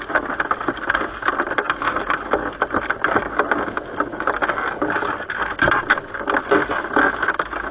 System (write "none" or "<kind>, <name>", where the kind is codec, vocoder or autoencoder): none